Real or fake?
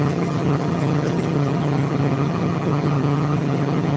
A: fake